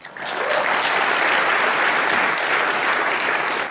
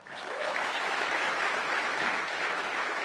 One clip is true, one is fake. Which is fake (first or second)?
second